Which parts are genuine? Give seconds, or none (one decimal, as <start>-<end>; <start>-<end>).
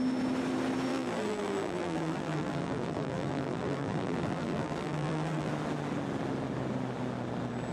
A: 0.0-0.9; 5.5-7.7